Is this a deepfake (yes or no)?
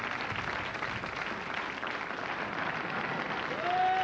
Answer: no